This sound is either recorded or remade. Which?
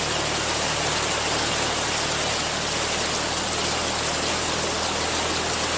recorded